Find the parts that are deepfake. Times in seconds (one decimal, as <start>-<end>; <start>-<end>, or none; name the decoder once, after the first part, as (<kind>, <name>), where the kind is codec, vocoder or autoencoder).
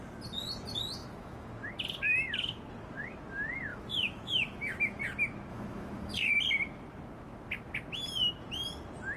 1.0-1.5 (autoencoder, DAC-VAE); 3.7-5.0; 5.5-6.3